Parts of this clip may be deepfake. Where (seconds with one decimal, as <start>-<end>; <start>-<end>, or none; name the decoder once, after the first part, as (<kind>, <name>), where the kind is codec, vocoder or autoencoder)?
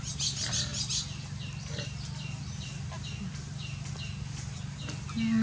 none